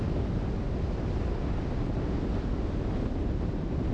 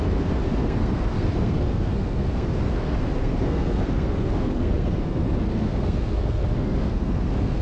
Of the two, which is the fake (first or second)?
second